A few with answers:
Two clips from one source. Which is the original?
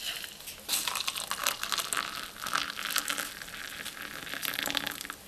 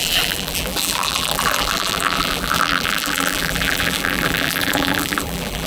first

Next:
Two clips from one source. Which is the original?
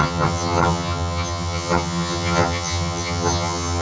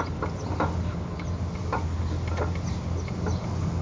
second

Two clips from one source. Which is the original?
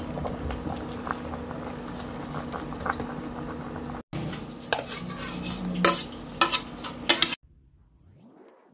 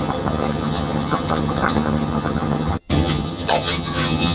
first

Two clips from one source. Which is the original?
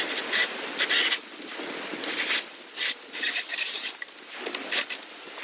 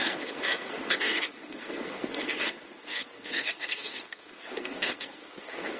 first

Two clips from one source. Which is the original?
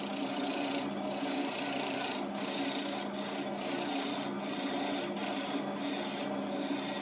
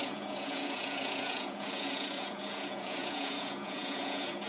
first